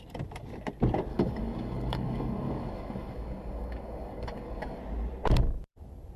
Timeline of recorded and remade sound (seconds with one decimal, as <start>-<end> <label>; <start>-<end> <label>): 0.0-1.1 recorded; 1.1-4.8 remade; 4.8-6.2 recorded